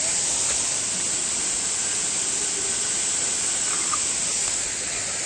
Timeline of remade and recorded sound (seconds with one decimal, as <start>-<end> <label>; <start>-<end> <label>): 0.0-5.3 recorded